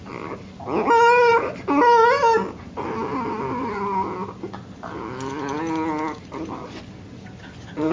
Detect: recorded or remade recorded